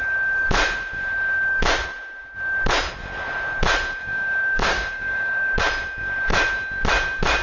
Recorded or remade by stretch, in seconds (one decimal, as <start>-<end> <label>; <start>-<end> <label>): 0.0-4.0 recorded; 4.0-5.6 remade; 5.6-7.4 recorded